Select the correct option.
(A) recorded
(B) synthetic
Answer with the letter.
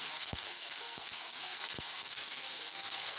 B